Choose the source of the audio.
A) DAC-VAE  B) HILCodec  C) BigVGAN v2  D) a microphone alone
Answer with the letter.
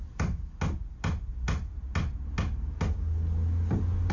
D